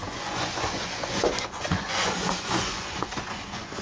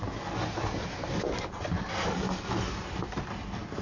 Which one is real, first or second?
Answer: second